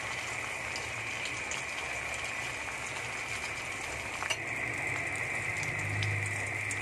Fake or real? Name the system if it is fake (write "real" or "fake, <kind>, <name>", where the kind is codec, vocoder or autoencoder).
real